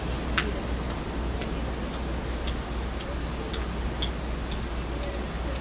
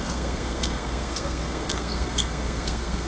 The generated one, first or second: second